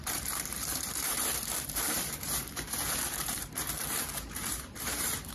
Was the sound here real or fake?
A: fake